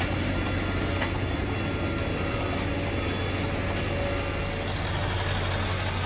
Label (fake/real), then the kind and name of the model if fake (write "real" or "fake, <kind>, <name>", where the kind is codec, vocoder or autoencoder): real